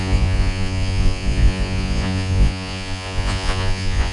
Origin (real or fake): fake